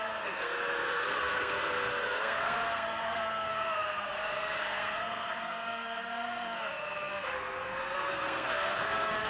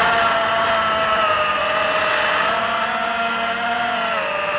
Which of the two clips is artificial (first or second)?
first